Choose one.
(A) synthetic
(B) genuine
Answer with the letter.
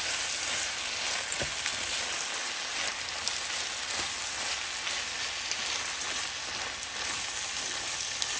B